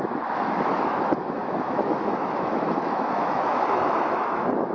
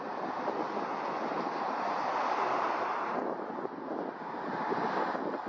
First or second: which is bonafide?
second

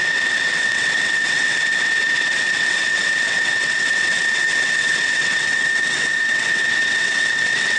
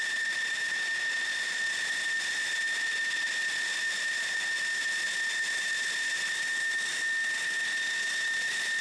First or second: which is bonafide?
second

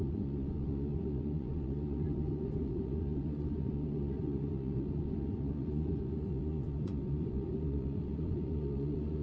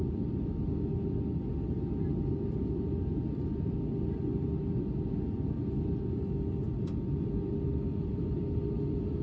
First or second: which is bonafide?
second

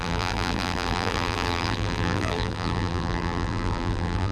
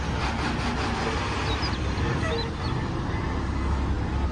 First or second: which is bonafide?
second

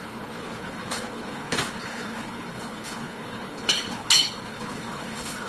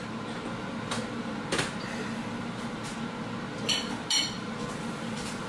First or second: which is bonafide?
second